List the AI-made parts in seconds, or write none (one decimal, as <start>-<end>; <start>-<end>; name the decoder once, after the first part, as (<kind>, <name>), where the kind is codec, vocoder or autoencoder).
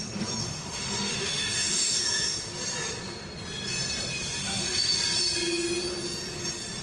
0.4-2.5 (autoencoder, DAC-VAE); 4.4-5.0